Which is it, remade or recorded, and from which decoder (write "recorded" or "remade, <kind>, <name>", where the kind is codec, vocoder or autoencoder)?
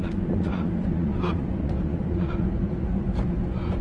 remade, vocoder, Vocos